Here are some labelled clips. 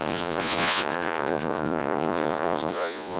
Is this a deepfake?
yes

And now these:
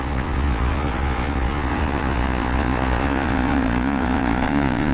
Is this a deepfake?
yes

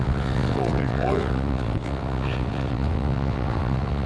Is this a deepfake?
yes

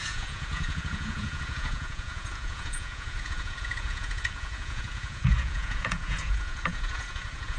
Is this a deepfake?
yes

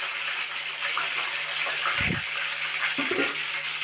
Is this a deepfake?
no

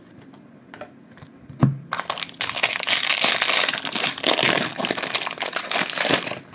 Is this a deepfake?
no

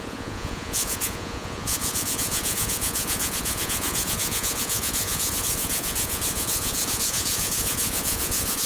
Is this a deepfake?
yes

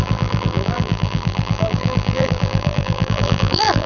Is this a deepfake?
yes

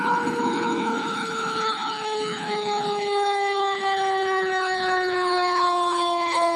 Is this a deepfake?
yes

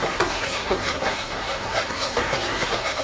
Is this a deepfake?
yes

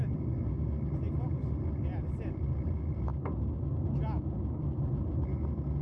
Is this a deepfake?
no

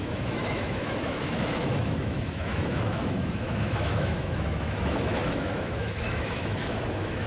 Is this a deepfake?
yes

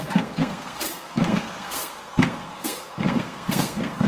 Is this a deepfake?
yes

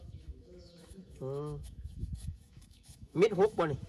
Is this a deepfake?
yes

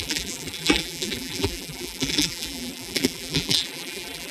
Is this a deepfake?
yes